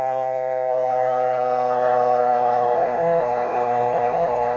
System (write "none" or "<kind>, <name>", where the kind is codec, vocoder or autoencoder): codec, SNAC